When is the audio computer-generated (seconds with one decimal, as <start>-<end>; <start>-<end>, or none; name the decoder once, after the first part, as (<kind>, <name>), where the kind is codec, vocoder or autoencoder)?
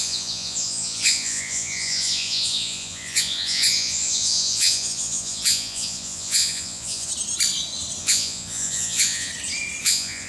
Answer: 0.0-7.1 (vocoder, Vocos); 8.0-9.3; 9.8-10.3